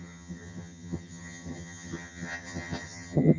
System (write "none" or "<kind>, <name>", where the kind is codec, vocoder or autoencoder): vocoder, HiFi-GAN